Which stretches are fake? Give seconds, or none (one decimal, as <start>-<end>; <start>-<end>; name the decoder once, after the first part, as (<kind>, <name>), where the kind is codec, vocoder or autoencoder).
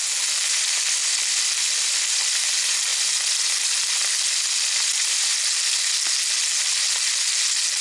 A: none